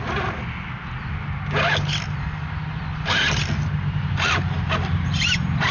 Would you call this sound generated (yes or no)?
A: no